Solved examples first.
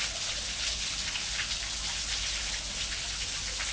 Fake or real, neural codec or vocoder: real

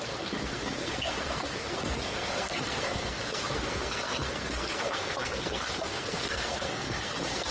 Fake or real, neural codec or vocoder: fake, codec, SNAC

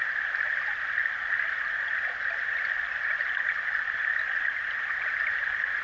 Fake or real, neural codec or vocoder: real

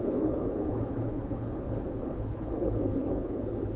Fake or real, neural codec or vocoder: fake, codec, HILCodec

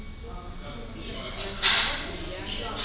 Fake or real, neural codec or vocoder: real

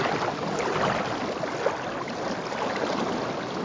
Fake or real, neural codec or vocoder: real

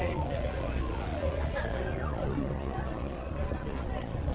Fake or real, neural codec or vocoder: fake, vocoder, Vocos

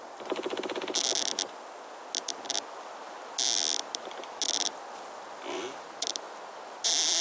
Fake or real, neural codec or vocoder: real